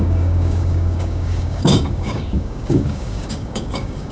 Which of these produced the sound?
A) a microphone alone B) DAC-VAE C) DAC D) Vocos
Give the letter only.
C